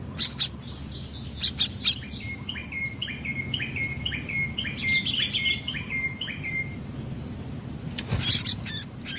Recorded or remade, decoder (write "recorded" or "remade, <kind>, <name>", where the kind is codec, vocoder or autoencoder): recorded